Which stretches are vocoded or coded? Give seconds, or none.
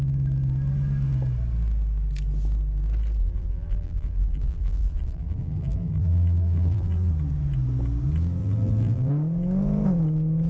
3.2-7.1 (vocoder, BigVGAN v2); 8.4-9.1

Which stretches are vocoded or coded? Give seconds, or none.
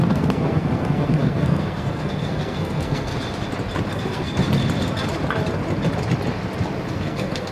0.0-3.1 (codec, SNAC); 3.9-4.4; 6.9-7.5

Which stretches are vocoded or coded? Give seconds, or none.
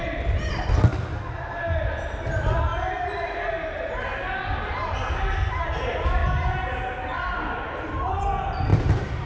8.7-9.3 (vocoder, BigVGAN v2)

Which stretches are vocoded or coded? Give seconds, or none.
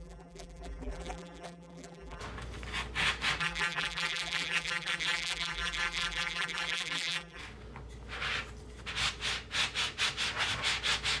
0.0-2.2 (vocoder, BigVGAN v2); 3.4-7.4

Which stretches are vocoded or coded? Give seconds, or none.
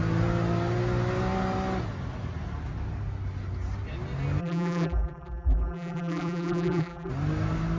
4.4-7.1 (vocoder, BigVGAN v2)